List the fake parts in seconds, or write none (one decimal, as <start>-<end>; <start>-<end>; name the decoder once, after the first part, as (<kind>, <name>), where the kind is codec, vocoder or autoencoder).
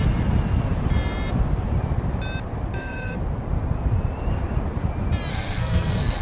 2.7-3.2 (codec, SNAC); 5.3-6.2